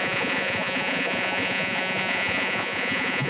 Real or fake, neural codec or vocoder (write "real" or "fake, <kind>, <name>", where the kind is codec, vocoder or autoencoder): fake, vocoder, Vocos